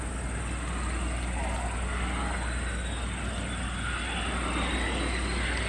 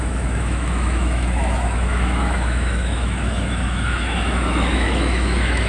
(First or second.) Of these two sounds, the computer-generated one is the second